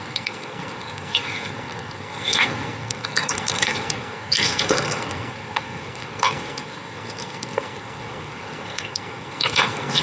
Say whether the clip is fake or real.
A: fake